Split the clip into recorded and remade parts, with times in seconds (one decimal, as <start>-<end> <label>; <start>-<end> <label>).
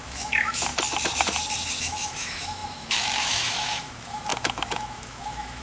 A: 0.0-0.7 remade; 0.7-1.8 recorded; 1.8-5.6 remade